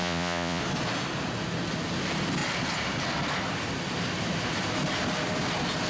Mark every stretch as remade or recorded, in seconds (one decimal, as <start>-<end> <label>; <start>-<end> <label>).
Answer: 0.0-0.6 remade; 0.6-5.9 recorded